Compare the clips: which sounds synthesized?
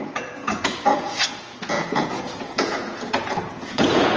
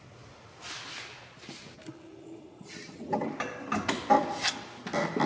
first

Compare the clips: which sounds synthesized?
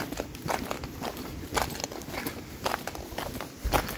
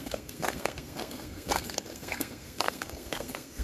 second